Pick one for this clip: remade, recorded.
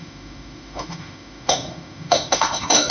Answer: remade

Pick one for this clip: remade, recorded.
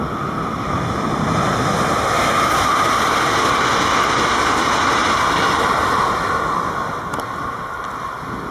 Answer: recorded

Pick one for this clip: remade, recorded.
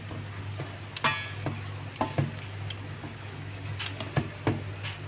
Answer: recorded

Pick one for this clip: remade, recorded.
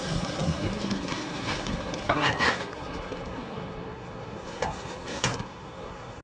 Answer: remade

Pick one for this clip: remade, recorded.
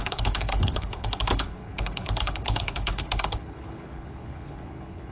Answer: remade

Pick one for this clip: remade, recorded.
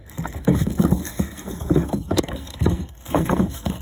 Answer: remade